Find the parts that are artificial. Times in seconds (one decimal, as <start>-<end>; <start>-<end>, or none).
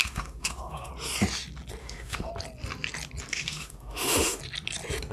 0.0-0.9; 1.8-2.3; 3.3-4.4